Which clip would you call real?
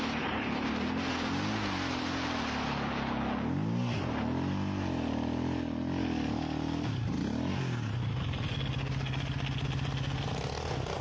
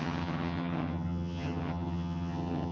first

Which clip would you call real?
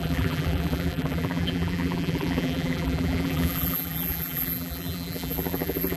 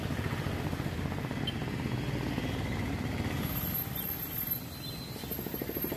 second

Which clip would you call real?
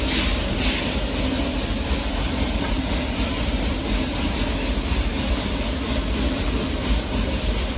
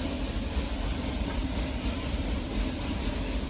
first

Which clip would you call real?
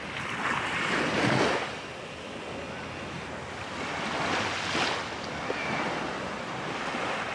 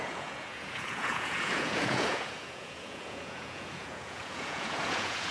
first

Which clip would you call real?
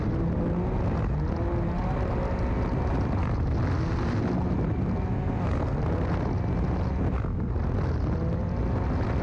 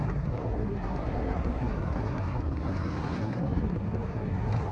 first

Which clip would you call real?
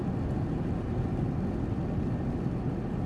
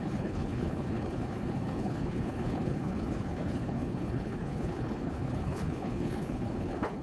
first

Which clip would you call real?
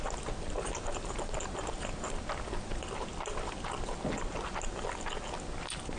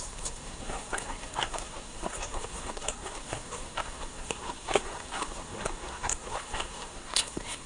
first